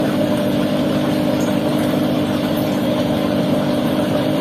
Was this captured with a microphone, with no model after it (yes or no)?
no